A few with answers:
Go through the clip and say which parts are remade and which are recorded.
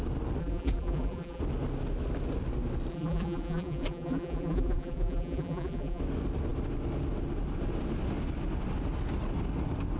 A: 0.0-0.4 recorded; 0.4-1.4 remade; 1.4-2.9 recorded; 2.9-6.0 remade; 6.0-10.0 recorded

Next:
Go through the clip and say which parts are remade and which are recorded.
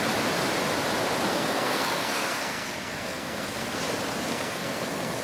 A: 0.0-1.3 recorded; 1.3-3.8 remade; 3.8-4.3 recorded; 4.3-5.2 remade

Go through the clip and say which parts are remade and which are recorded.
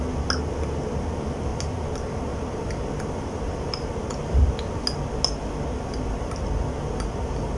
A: 0.0-7.6 recorded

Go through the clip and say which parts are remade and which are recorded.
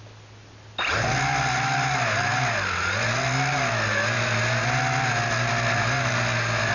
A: 0.0-6.7 recorded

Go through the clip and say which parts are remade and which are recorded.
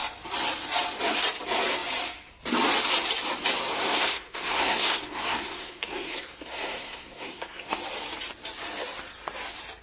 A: 0.0-3.7 recorded; 3.7-7.7 remade; 7.7-9.8 recorded